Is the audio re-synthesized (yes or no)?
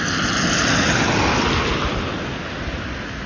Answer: no